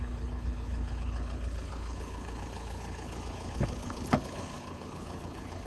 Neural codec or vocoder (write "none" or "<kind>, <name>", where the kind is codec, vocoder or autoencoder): codec, HILCodec